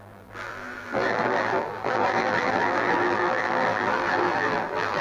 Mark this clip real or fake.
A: fake